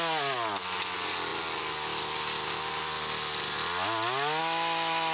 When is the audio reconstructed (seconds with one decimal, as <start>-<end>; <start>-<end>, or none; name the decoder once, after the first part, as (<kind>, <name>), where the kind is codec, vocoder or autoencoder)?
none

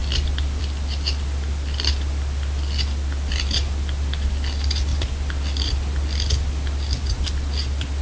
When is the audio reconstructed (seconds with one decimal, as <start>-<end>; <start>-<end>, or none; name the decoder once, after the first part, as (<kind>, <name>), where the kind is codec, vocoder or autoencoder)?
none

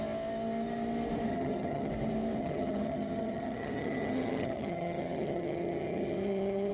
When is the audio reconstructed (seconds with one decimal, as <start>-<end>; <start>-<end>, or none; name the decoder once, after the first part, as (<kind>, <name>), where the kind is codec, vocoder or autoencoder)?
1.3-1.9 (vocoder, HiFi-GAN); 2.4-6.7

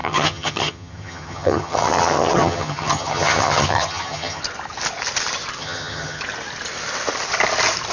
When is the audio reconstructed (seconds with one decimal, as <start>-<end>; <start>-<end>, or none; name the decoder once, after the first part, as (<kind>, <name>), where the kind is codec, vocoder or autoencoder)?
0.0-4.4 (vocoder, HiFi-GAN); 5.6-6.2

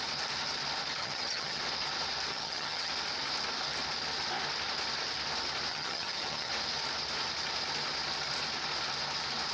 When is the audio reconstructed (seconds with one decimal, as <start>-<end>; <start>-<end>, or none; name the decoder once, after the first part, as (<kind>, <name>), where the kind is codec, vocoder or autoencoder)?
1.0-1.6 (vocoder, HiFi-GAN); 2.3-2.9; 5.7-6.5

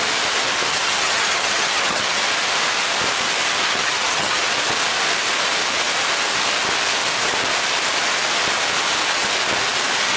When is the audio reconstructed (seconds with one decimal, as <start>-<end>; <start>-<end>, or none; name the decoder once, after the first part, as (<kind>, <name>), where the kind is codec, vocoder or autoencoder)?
0.7-2.2 (vocoder, HiFi-GAN); 3.6-4.4

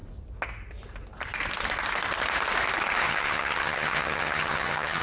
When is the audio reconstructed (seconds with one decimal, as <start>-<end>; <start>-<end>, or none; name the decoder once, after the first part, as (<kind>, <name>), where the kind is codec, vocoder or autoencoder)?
3.0-5.0 (vocoder, HiFi-GAN)

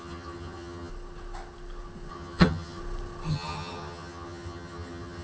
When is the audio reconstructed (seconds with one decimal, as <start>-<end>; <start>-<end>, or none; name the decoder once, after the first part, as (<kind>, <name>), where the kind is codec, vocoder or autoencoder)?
0.0-0.9 (vocoder, HiFi-GAN); 2.1-2.8; 3.3-5.2